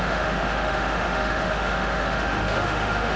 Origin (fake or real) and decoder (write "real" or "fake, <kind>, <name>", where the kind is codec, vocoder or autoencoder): fake, autoencoder, DAC-VAE